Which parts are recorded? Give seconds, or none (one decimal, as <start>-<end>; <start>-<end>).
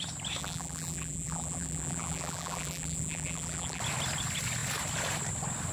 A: 0.0-0.4; 3.8-5.7